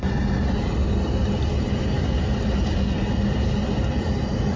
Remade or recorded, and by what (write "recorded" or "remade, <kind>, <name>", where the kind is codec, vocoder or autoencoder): recorded